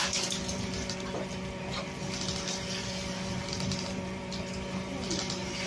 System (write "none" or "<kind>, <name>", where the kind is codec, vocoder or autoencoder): none